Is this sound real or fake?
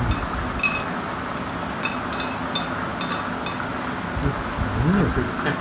real